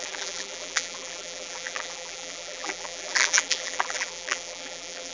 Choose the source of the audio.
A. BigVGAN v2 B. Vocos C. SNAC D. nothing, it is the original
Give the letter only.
A